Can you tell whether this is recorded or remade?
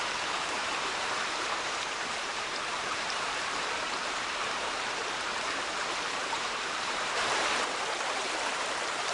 remade